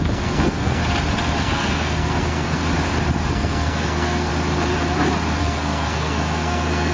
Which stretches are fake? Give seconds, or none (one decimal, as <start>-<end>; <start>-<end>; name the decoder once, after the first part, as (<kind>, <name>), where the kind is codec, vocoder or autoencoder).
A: 0.0-0.8 (codec, SNAC); 1.4-2.6; 3.3-4.3; 5.4-6.9